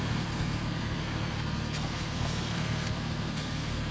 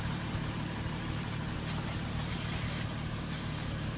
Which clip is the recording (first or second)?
second